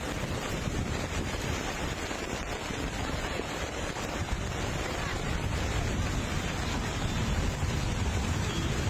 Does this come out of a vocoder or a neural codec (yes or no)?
no